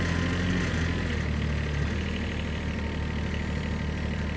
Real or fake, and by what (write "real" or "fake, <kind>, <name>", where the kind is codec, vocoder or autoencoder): real